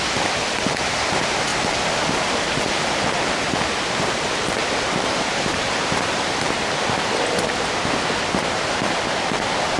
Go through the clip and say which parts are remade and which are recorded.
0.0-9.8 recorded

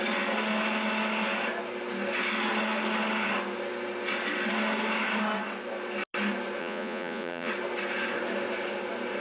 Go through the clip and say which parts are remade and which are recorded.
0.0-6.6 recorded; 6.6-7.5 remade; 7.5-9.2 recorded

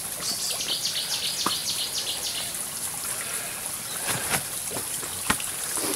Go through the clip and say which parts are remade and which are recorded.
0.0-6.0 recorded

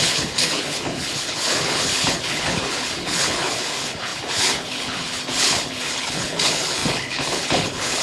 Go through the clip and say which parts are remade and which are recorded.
0.0-8.0 remade

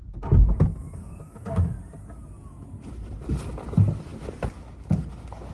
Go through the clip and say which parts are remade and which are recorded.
0.0-0.7 recorded; 0.7-1.7 remade; 1.7-5.5 recorded

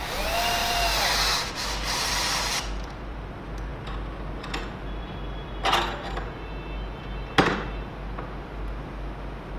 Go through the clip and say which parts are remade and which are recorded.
0.0-0.6 recorded; 0.6-3.3 remade; 3.3-9.6 recorded